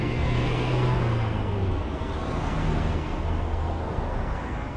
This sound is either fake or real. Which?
fake